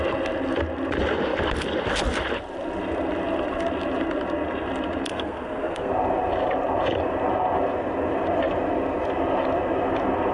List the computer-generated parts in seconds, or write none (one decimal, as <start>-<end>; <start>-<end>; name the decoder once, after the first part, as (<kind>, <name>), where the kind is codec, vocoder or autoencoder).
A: 5.1-5.9 (codec, SNAC)